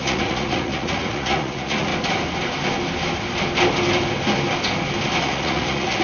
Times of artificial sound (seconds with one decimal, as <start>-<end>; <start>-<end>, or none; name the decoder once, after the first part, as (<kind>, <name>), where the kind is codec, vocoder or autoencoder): 0.0-1.9 (vocoder, Vocos); 5.2-6.0